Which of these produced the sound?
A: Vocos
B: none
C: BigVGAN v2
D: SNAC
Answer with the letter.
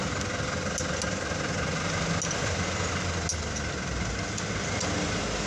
B